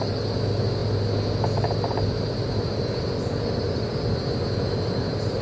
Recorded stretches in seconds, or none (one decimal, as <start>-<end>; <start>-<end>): 0.0-5.4

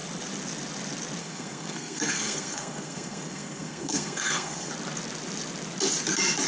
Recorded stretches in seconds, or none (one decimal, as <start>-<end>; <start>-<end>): 0.0-1.2; 4.7-6.5

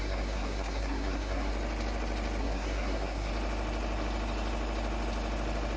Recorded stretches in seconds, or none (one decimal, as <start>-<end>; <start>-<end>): 1.5-2.4; 3.3-5.8

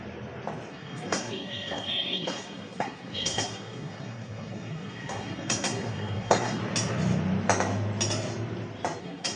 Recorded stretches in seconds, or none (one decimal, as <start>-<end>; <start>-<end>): 0.0-0.7; 6.6-9.0